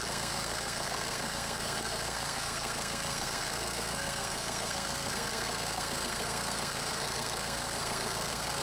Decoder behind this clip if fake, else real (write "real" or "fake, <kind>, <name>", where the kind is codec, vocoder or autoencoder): fake, codec, SNAC